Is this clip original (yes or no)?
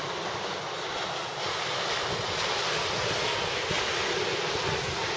yes